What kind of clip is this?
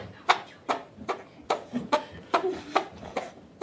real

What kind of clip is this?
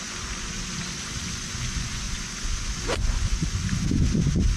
fake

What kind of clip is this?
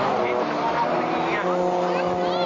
real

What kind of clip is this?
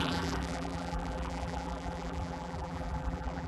fake